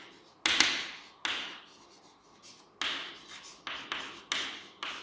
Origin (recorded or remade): recorded